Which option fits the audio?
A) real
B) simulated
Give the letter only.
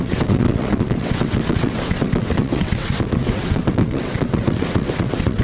B